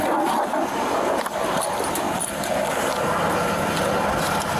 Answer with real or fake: real